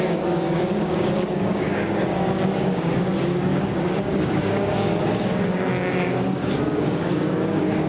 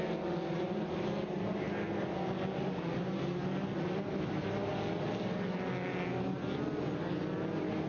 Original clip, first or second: second